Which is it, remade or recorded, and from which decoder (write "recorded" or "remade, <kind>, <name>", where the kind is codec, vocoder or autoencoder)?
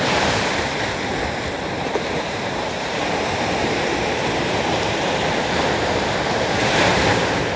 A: remade, vocoder, BigVGAN v2